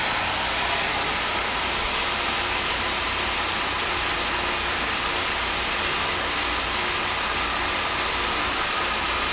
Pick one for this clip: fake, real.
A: real